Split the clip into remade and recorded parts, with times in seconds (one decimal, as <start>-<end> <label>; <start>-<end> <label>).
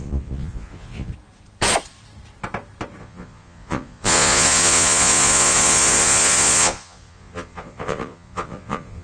0.0-1.1 remade; 1.1-3.0 recorded; 3.0-9.0 remade